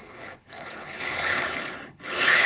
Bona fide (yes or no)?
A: no